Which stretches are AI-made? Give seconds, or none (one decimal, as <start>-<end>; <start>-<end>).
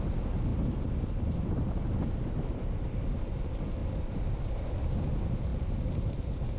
0.5-3.4; 3.8-4.5; 5.5-6.1